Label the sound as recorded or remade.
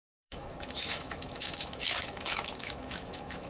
remade